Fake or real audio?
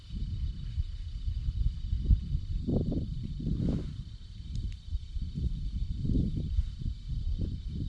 real